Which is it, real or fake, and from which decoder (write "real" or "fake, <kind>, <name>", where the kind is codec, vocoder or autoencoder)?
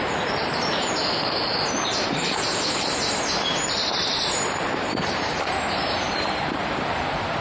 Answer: fake, vocoder, BigVGAN v2